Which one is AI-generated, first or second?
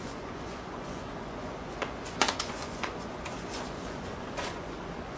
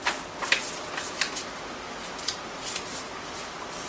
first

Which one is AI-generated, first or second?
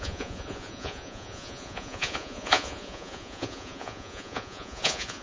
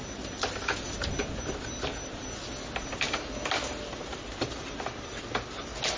first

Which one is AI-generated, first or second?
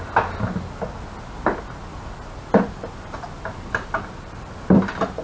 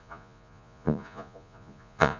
second